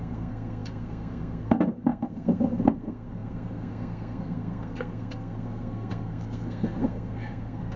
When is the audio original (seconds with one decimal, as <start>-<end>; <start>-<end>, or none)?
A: none